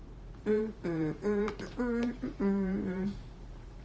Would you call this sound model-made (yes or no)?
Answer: yes